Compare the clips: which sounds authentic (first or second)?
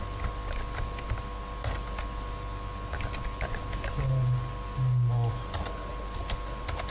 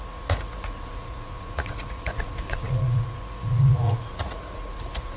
first